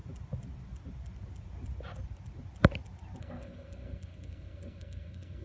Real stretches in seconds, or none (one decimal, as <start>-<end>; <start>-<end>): 0.0-3.2